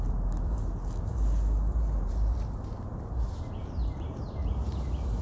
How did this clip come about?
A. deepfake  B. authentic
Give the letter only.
B